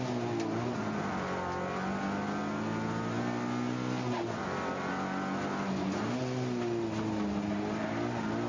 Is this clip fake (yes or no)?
no